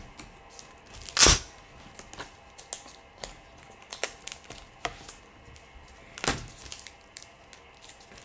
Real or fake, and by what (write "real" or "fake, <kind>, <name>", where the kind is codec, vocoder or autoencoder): real